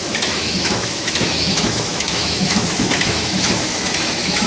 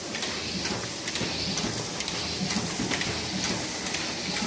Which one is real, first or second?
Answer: second